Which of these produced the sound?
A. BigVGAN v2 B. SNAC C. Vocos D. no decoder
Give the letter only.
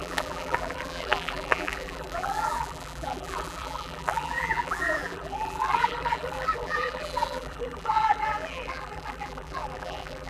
A